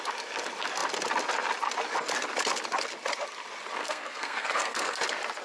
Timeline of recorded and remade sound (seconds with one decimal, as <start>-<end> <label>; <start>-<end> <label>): 0.0-3.8 recorded; 3.8-5.0 remade; 5.0-5.4 recorded